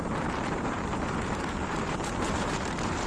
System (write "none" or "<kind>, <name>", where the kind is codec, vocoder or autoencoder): vocoder, BigVGAN v2